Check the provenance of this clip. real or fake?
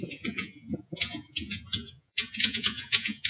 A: fake